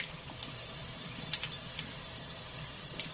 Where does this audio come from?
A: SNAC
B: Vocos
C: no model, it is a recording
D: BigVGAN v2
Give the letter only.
D